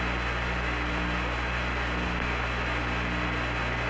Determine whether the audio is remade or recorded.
recorded